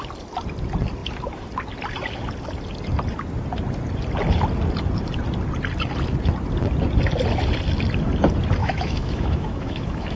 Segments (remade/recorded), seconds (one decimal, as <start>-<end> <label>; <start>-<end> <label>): 0.0-8.6 recorded; 8.6-10.2 remade